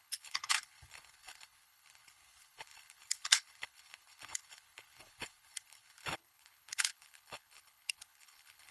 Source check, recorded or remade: remade